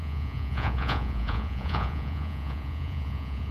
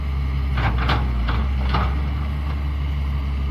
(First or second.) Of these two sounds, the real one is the second